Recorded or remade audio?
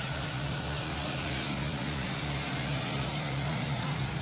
remade